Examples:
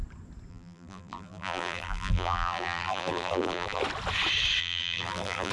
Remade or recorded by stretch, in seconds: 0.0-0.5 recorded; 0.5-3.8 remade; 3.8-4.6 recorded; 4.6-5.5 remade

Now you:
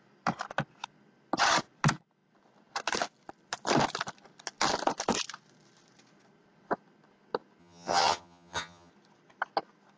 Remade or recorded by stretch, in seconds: 0.0-7.6 recorded; 7.6-8.9 remade; 8.9-10.0 recorded

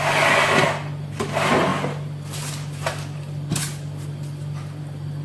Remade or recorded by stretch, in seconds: 0.0-1.7 recorded; 1.7-4.8 remade; 4.8-5.2 recorded

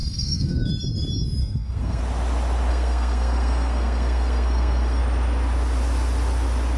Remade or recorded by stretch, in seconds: 0.0-0.7 remade; 0.7-1.4 recorded; 1.4-2.0 remade; 2.0-2.7 recorded; 2.7-5.0 remade; 5.0-6.8 recorded

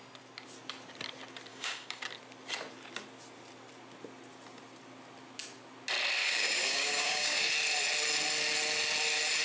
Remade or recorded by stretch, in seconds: 0.0-1.5 recorded; 1.5-2.0 remade; 2.0-6.2 recorded; 6.2-7.5 remade; 7.5-9.4 recorded